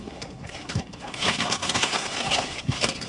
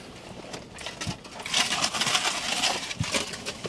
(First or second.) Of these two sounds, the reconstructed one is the first